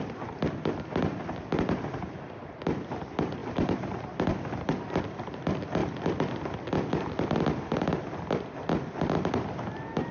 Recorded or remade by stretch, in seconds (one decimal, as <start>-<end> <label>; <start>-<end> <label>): 0.0-3.4 remade; 3.4-5.0 recorded; 5.0-5.8 remade; 5.8-7.8 recorded; 7.8-10.1 remade